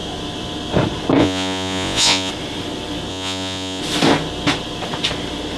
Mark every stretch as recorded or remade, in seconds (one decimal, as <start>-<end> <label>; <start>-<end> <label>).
0.0-1.2 recorded; 1.2-2.3 remade; 2.3-3.1 recorded; 3.1-3.8 remade; 3.8-5.6 recorded